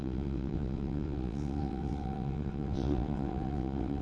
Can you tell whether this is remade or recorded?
remade